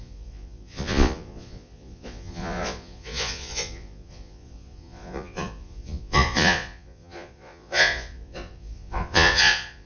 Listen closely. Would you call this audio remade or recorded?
remade